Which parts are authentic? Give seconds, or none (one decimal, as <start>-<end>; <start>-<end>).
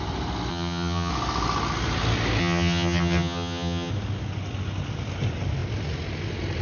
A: 0.0-0.5; 1.1-2.4; 3.9-6.6